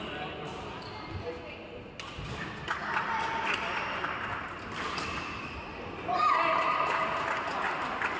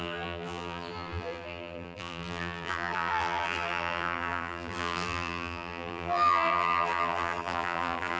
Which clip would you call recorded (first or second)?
first